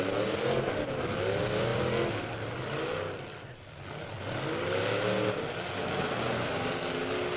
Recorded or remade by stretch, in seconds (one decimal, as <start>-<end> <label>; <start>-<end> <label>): 0.0-7.4 recorded